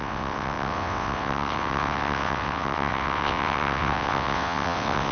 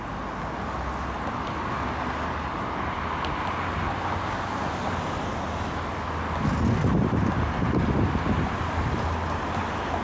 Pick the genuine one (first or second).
second